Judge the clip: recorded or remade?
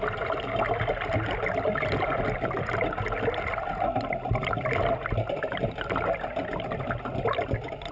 recorded